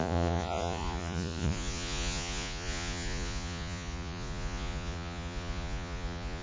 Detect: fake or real fake